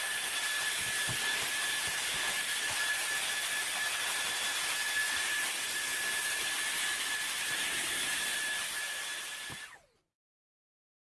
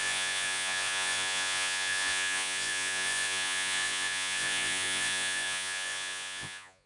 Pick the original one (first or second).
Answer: first